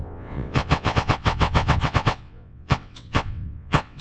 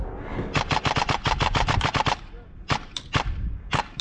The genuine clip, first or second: second